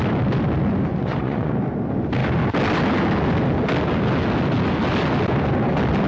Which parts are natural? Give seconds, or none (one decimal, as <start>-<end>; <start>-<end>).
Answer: 0.0-0.9; 1.5-6.1